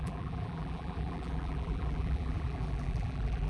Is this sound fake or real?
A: fake